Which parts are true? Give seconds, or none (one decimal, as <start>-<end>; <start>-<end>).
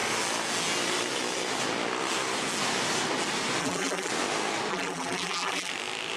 0.0-3.6; 4.1-4.7; 5.7-6.2